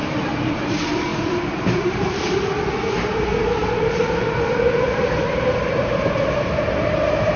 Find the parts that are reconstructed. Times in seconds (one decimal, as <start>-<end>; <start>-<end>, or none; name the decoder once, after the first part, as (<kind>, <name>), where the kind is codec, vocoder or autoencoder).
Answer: 0.0-7.4 (vocoder, BigVGAN v2)